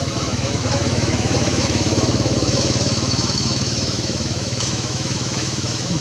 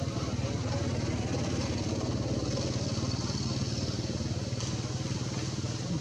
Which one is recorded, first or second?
second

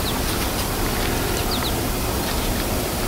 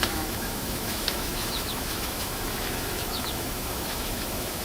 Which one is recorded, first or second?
first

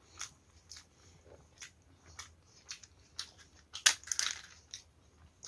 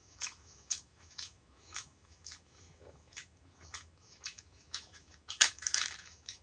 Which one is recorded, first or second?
first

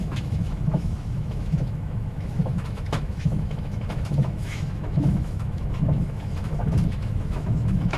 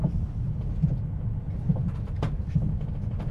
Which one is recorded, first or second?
second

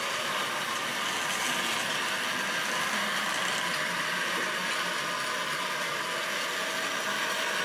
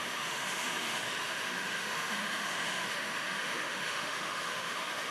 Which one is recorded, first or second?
first